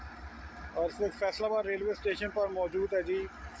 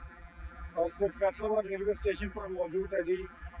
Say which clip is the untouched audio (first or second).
first